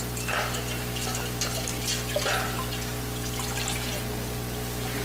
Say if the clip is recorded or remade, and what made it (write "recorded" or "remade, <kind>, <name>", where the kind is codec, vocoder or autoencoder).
recorded